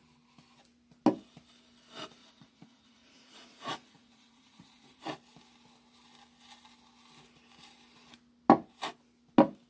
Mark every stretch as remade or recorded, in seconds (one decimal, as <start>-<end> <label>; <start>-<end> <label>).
0.0-2.2 recorded; 2.2-5.0 remade; 5.0-9.7 recorded